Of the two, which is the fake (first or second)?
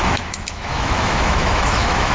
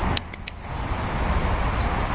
first